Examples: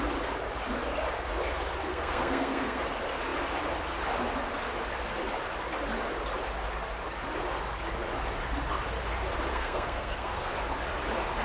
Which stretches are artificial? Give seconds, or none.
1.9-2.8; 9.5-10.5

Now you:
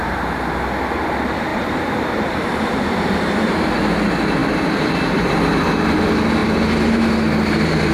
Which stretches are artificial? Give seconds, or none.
1.5-3.1; 6.4-7.0

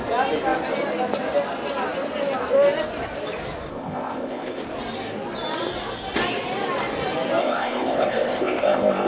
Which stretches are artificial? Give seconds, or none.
3.7-4.6; 7.4-9.1